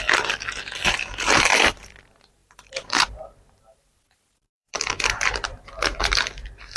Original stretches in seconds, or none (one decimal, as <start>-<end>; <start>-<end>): 0.0-1.5; 2.0-2.4